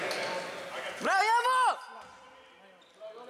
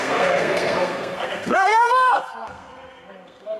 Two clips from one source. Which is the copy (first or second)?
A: second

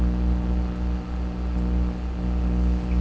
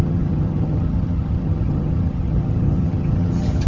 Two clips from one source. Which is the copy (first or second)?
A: second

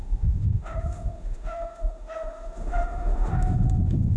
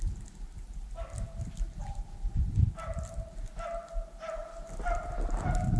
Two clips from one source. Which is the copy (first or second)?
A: first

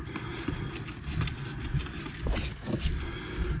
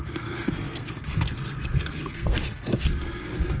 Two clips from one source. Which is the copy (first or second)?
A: second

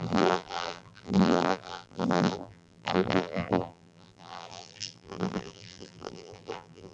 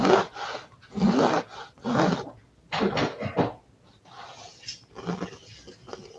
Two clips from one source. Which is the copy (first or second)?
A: first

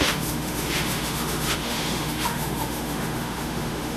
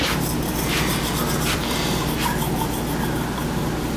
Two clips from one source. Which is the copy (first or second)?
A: first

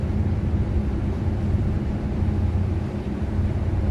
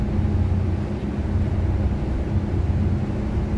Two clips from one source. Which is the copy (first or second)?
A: first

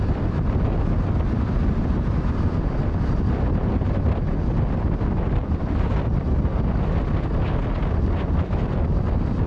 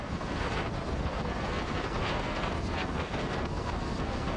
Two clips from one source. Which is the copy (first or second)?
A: second